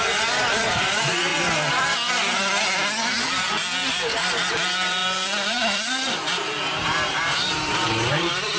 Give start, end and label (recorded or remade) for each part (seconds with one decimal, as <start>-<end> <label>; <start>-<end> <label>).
0.0-1.3 remade; 1.3-3.9 recorded; 3.9-8.6 remade